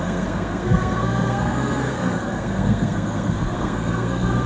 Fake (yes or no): yes